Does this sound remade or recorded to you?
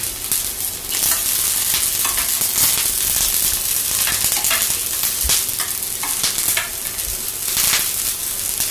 recorded